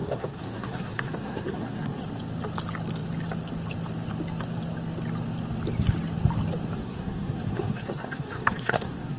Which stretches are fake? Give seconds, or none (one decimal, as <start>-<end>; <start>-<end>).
0.0-2.1; 6.8-9.2